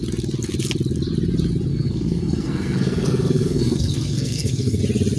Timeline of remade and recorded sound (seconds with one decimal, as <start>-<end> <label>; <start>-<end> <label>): 0.0-1.7 recorded; 1.7-4.8 remade; 4.8-5.2 recorded